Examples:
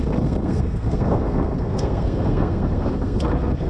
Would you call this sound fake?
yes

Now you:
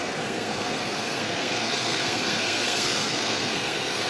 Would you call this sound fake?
yes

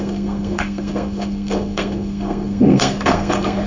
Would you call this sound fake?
yes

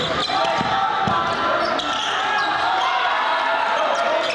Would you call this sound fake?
no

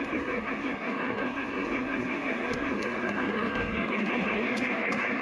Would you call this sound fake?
yes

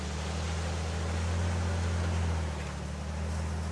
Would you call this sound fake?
no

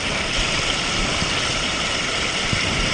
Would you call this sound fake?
no